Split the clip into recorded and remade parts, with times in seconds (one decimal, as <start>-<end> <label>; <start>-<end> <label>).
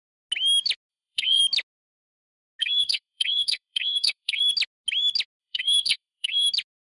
0.0-0.9 recorded; 0.9-1.4 remade; 1.4-2.6 recorded; 2.6-4.4 remade; 4.4-5.4 recorded; 5.4-6.5 remade; 6.5-6.9 recorded